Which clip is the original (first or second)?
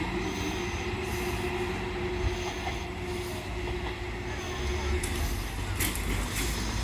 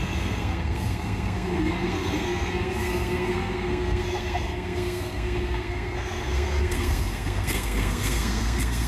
first